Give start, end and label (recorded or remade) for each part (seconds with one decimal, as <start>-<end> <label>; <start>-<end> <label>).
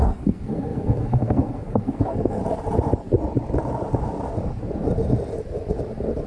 0.0-2.4 remade; 2.4-6.3 recorded